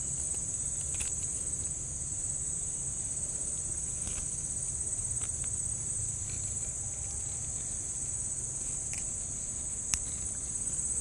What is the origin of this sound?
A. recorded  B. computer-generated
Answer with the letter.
A